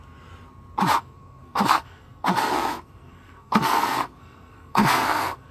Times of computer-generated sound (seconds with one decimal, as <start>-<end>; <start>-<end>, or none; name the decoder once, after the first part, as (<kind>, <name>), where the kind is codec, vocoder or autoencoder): 1.0-5.5 (codec, SNAC)